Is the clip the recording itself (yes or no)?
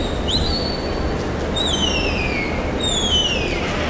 yes